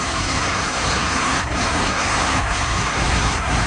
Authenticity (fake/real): fake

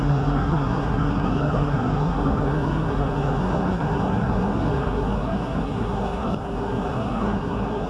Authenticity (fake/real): fake